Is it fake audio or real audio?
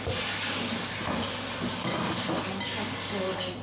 real